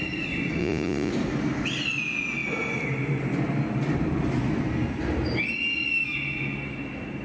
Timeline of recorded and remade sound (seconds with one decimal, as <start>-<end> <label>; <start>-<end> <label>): 0.0-0.6 recorded; 0.6-1.1 remade; 1.1-7.2 recorded